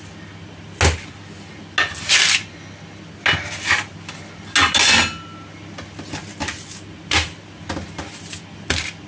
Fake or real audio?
real